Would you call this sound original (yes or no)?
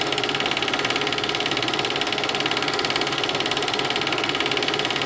yes